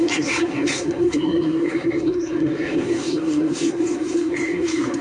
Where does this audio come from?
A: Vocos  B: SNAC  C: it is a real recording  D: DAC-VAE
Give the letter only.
B